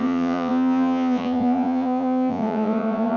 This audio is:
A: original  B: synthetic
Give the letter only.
B